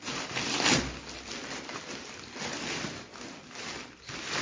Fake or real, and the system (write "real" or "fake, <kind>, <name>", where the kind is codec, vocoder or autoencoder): real